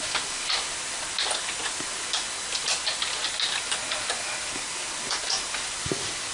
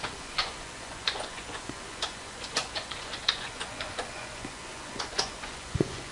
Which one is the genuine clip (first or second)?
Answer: first